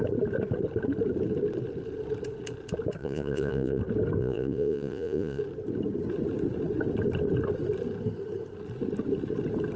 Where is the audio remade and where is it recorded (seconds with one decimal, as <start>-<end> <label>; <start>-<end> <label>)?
0.0-3.0 recorded; 3.0-3.8 remade; 3.8-4.2 recorded; 4.2-5.4 remade; 5.4-9.8 recorded